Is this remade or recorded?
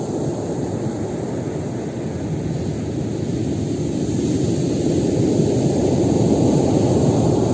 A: recorded